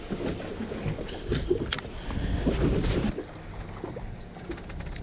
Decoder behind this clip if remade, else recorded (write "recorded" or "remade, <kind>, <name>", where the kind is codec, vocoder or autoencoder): recorded